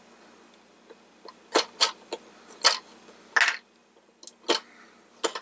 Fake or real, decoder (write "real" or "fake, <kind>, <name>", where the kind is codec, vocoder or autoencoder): real